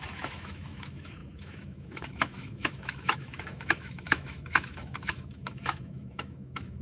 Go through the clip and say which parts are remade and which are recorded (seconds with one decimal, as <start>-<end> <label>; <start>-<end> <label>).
0.0-6.8 remade